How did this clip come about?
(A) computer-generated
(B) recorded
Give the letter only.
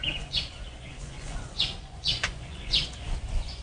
A